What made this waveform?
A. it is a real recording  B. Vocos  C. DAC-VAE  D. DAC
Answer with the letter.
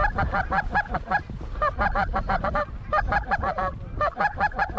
A